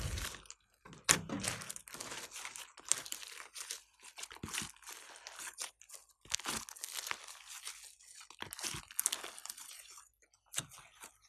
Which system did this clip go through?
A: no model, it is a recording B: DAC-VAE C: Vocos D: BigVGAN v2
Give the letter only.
A